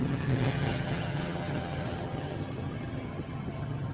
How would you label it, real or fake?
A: fake